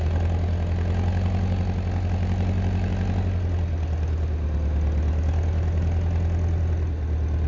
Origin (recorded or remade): recorded